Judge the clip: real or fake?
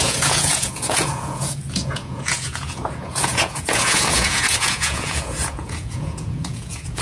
fake